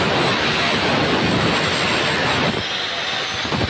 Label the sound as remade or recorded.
recorded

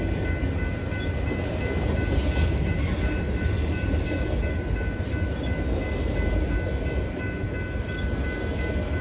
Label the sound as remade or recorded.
recorded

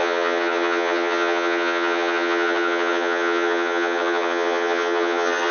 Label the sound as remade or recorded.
remade